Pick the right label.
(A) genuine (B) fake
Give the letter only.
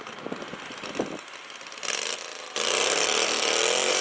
A